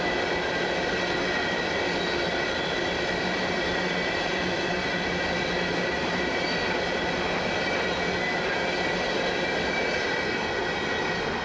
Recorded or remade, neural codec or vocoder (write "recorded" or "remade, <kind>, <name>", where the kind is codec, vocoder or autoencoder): recorded